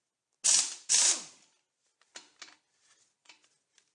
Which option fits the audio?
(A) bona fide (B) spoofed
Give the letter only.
A